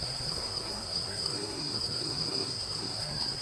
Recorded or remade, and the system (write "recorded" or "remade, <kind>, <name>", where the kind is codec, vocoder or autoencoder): remade, codec, SNAC